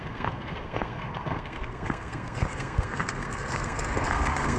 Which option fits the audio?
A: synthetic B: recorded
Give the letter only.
A